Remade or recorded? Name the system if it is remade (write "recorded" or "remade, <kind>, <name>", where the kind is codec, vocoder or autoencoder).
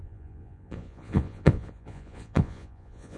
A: remade, vocoder, Vocos